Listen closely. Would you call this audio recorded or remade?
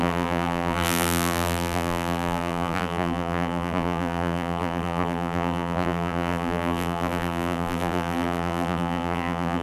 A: remade